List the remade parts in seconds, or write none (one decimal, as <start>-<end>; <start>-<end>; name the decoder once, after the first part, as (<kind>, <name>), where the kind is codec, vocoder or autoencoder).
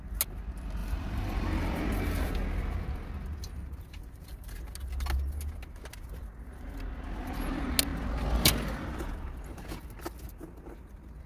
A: 0.8-2.3 (vocoder, BigVGAN v2); 3.6-4.4